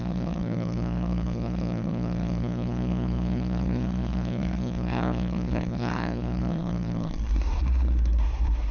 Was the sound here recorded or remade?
remade